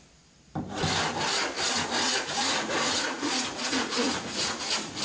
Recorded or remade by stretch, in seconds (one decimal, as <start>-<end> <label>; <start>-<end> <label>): 0.0-2.1 recorded; 2.1-4.6 remade; 4.6-5.0 recorded